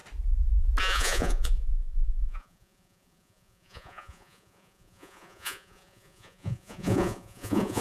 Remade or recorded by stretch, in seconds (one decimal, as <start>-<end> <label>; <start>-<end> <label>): 0.0-0.8 recorded; 0.8-7.8 remade